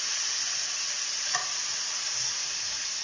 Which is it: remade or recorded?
recorded